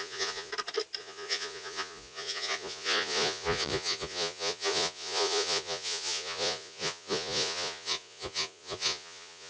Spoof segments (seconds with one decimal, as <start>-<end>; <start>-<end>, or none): 0.0-0.5; 1.0-9.5